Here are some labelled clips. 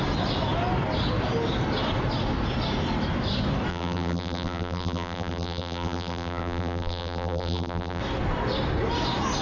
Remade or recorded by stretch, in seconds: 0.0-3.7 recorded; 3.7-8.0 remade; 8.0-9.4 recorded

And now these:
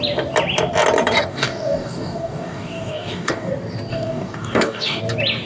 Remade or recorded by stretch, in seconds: 0.0-1.3 recorded; 1.3-3.5 remade; 3.5-3.9 recorded; 3.9-5.0 remade; 5.0-5.5 recorded

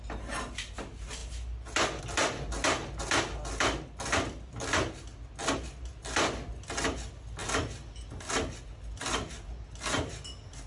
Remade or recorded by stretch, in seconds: 0.0-10.7 recorded

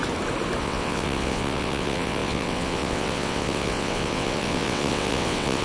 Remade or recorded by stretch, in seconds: 0.0-0.6 recorded; 0.6-5.6 remade

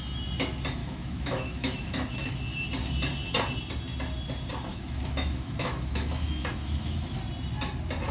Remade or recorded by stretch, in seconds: 0.0-0.8 recorded; 0.8-2.3 remade; 2.3-4.7 recorded; 4.7-7.2 remade; 7.2-8.1 recorded

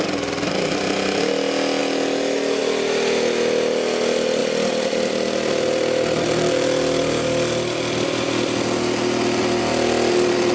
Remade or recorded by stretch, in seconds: 0.0-10.5 recorded

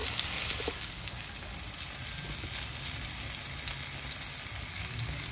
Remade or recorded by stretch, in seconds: 0.0-0.7 recorded; 0.7-1.5 remade; 1.5-4.7 recorded; 4.7-5.3 remade

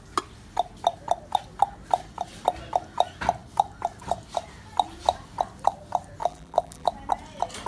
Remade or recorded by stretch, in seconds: 0.0-6.2 recorded; 6.2-6.9 remade; 6.9-7.7 recorded